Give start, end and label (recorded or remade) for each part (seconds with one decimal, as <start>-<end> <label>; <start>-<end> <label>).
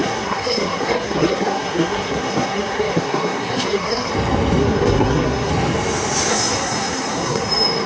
0.0-4.1 remade; 4.1-4.6 recorded; 4.6-5.5 remade; 5.5-6.3 recorded; 6.3-7.5 remade; 7.5-7.9 recorded